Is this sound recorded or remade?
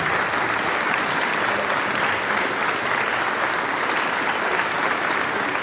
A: recorded